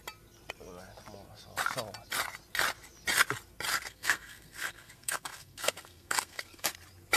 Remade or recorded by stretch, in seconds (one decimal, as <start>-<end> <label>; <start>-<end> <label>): 0.0-3.7 recorded; 3.7-6.7 remade; 6.7-7.2 recorded